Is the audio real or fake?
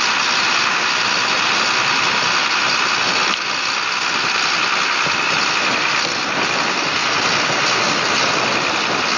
real